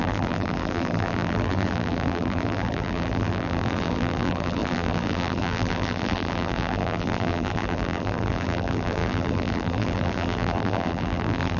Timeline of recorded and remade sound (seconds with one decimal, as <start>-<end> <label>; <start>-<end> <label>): 0.0-11.6 remade